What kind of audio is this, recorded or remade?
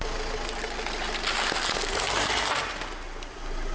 recorded